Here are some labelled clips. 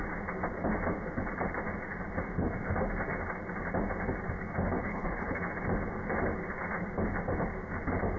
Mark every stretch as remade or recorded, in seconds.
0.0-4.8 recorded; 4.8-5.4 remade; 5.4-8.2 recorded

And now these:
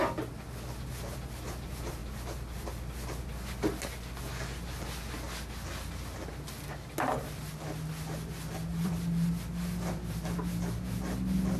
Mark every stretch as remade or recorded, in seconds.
0.0-8.7 recorded; 8.7-9.3 remade; 9.3-11.6 recorded

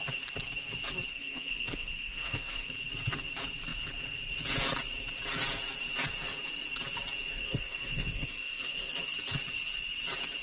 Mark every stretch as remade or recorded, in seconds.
0.0-1.1 recorded; 1.1-2.7 remade; 2.7-7.4 recorded; 7.4-9.0 remade; 9.0-10.4 recorded